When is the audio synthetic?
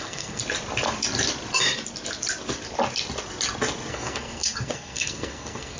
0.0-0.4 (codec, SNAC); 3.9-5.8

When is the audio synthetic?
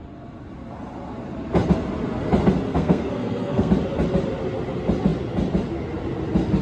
2.7-3.7 (codec, SNAC)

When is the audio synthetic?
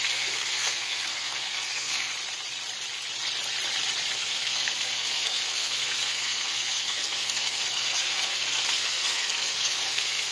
0.0-2.1 (codec, SNAC); 4.1-10.3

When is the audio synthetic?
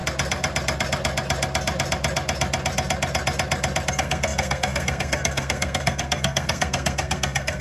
3.9-7.6 (codec, SNAC)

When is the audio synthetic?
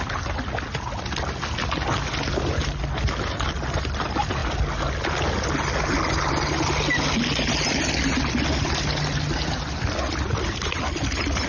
none